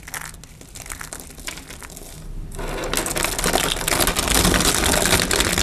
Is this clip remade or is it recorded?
recorded